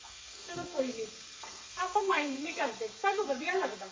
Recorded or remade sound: remade